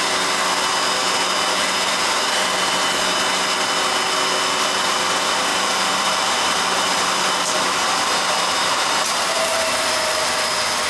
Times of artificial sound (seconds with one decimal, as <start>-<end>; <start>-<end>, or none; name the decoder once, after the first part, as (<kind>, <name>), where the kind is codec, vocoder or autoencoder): 5.5-9.6 (vocoder, BigVGAN v2)